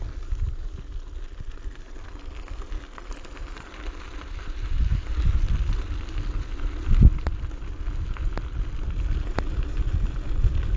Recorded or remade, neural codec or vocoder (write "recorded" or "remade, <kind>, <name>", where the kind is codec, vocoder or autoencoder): recorded